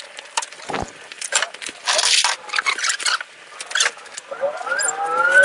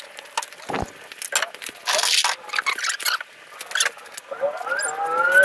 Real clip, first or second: second